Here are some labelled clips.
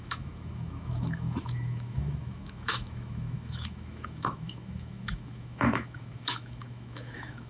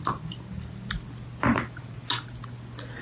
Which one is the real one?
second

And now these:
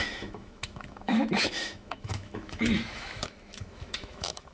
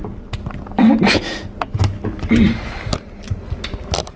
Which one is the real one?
second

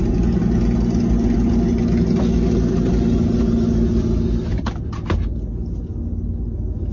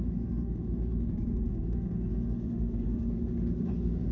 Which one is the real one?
first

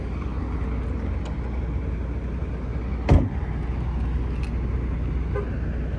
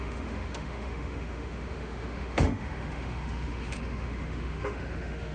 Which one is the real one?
first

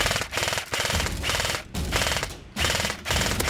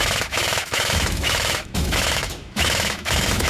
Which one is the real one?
first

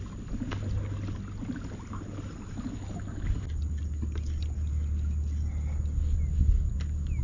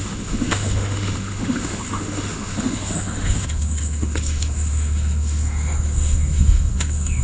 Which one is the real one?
first